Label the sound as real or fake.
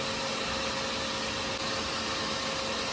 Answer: real